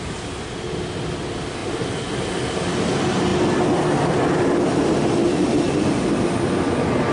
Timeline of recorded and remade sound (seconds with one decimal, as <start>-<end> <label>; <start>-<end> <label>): 0.0-1.6 recorded; 1.6-2.5 remade; 2.5-5.2 recorded; 5.2-5.8 remade; 5.8-7.1 recorded